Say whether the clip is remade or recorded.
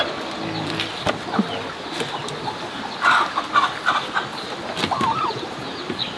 recorded